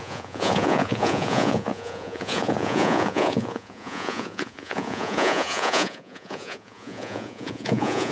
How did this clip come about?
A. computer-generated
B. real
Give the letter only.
A